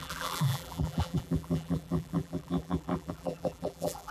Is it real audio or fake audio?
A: fake